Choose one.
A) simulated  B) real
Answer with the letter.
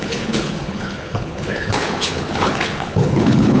A